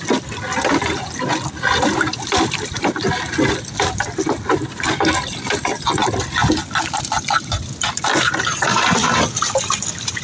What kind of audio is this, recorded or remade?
recorded